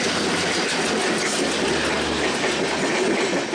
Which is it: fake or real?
real